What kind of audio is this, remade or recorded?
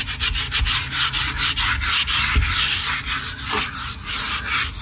recorded